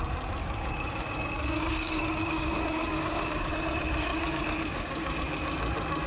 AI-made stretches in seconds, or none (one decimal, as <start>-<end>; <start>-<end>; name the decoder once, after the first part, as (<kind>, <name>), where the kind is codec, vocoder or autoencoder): 0.4-3.5 (codec, DAC); 4.1-5.2